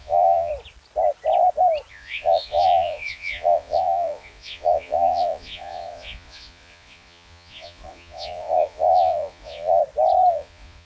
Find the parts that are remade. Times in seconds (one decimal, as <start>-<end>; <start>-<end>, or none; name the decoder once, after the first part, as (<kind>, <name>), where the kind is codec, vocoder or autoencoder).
0.0-0.5 (vocoder, Vocos); 1.9-9.8; 10.3-10.9